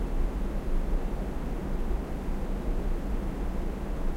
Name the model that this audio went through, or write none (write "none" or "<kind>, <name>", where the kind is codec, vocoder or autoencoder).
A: none